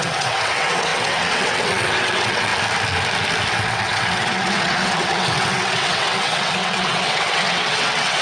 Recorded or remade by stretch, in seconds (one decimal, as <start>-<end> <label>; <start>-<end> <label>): 0.0-2.5 remade; 2.5-3.5 recorded; 3.5-8.2 remade